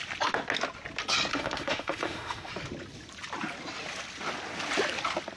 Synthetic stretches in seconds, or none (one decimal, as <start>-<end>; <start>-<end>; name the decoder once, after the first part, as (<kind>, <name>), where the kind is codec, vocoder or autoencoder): 1.3-2.5 (autoencoder, DAC-VAE)